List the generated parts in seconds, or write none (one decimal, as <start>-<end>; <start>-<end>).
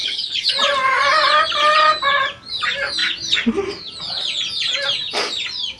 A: 0.0-0.5